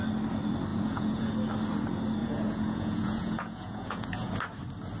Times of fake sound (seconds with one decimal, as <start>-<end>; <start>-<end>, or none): 0.7-1.3; 2.2-4.3